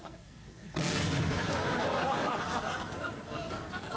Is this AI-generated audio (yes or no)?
yes